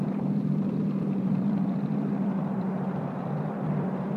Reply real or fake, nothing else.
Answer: fake